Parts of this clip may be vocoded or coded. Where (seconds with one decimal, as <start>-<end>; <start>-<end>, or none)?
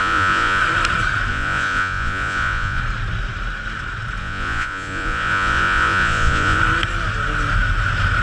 0.0-0.6; 1.3-2.8; 4.2-6.6